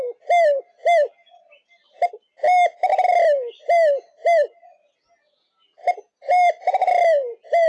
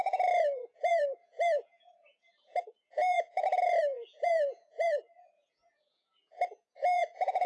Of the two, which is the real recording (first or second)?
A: first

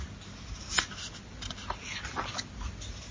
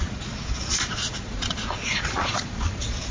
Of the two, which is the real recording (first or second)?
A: first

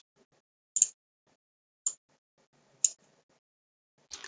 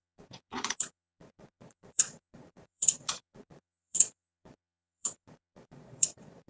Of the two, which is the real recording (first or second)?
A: first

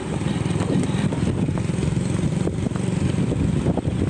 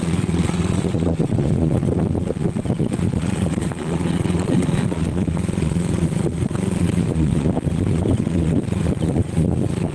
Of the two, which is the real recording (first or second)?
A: first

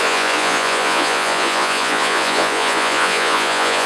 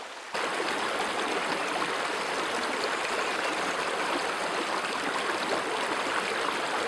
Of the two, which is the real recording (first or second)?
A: second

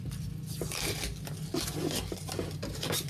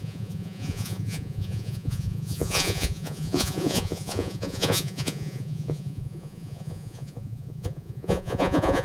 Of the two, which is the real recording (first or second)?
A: first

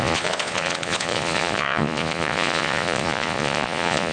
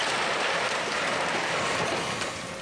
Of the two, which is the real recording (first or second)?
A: second